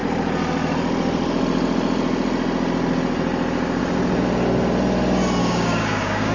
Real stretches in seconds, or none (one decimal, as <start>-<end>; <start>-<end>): 0.0-5.4